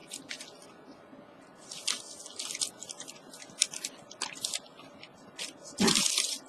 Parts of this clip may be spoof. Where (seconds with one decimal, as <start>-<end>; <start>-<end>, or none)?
5.1-6.5